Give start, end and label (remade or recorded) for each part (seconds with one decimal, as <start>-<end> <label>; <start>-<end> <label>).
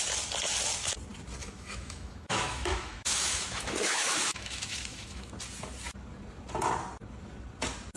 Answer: 0.0-1.4 recorded; 1.4-5.3 remade; 5.3-8.0 recorded